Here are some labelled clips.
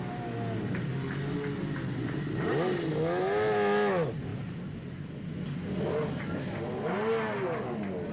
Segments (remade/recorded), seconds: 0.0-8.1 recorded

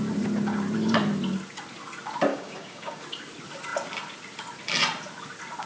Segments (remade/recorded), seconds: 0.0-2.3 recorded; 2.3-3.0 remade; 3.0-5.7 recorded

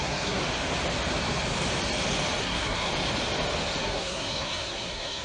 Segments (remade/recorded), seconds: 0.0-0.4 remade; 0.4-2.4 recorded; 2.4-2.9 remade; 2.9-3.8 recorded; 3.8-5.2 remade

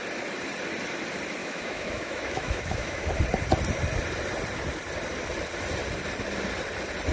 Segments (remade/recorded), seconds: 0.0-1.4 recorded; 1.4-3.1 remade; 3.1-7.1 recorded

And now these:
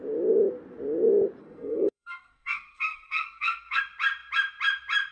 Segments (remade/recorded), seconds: 0.0-1.4 recorded; 1.4-3.8 remade; 3.8-5.1 recorded

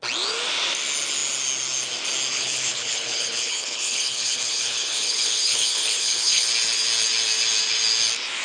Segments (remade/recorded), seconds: 0.0-2.3 recorded; 2.3-6.5 remade; 6.5-8.4 recorded

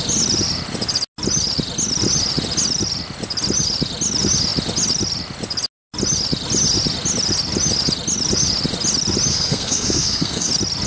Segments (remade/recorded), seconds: 0.0-9.3 recorded; 9.3-10.5 remade; 10.5-10.9 recorded

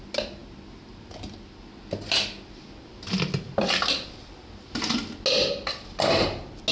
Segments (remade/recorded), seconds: 0.0-6.7 recorded